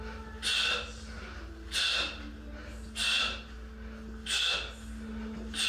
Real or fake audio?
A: real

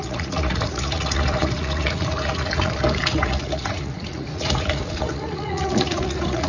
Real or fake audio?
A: fake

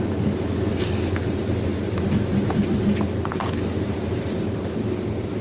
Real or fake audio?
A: real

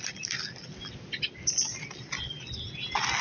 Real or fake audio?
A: real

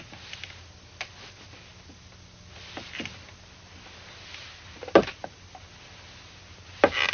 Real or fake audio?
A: real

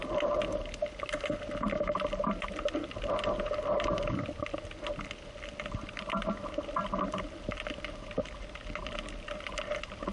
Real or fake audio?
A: real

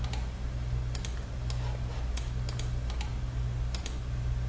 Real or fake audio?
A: real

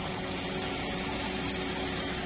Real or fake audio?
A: real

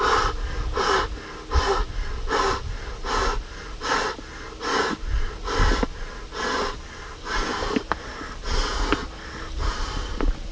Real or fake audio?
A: real